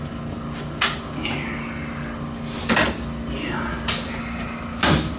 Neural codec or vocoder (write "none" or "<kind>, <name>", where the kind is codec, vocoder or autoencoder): none